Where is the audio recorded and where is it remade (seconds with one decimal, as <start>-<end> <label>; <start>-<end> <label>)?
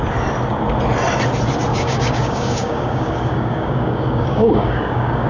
0.0-1.7 recorded; 1.7-5.3 remade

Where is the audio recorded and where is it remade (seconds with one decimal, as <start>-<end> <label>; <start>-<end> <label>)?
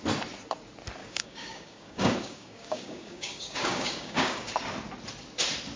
0.0-1.0 recorded; 1.0-4.5 remade; 4.5-5.8 recorded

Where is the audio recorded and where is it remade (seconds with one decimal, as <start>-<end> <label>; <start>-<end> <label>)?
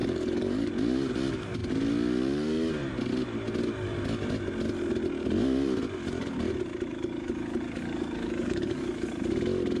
0.0-0.7 remade; 0.7-6.9 recorded; 6.9-9.1 remade; 9.1-9.8 recorded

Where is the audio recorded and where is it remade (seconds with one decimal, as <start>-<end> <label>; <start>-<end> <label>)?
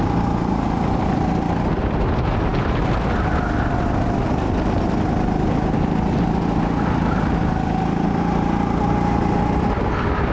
0.0-10.3 recorded